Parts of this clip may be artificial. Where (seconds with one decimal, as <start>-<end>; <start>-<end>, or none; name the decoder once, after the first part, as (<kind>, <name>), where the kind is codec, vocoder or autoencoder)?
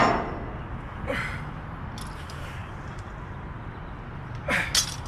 2.6-3.8 (vocoder, BigVGAN v2)